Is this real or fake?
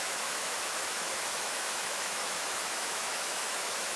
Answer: fake